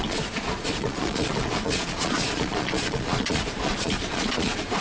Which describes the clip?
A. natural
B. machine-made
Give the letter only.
B